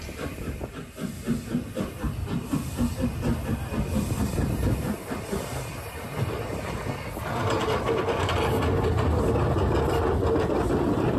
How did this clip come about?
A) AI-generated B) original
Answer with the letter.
B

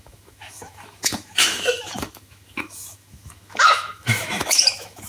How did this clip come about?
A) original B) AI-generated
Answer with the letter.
B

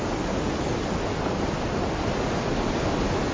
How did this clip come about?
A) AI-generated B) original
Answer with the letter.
B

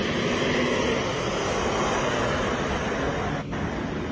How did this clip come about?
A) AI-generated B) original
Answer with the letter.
B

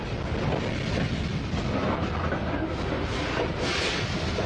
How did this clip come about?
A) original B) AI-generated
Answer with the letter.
A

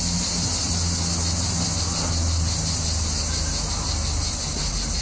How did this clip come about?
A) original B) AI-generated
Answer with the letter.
A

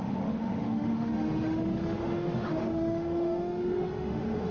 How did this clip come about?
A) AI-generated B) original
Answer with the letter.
A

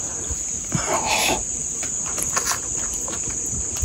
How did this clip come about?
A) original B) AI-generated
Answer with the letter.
A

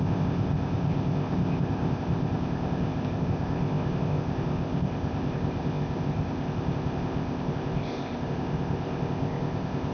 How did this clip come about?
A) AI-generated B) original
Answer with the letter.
A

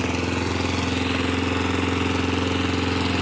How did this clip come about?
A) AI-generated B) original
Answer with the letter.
B